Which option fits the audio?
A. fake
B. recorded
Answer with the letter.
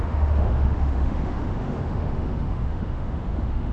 A